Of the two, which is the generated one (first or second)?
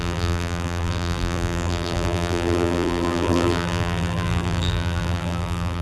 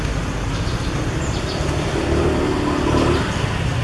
first